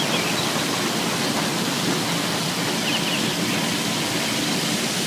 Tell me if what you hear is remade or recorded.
recorded